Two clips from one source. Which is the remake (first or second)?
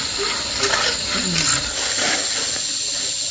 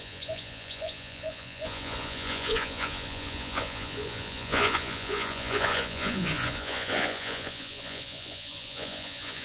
second